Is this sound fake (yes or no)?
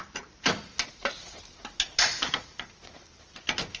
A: no